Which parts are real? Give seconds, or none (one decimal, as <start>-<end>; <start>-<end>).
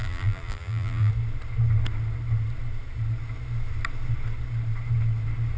1.1-5.6